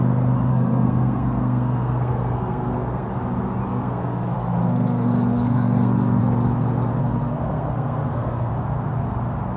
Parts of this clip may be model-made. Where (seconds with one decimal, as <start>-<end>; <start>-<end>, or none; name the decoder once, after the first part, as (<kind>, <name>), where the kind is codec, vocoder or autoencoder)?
0.5-3.1 (codec, SNAC); 3.7-6.2; 7.0-8.5